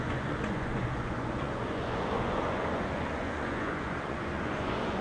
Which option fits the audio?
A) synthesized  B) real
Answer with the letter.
A